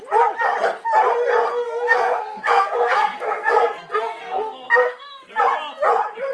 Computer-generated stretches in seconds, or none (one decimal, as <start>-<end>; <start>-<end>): 1.5-5.3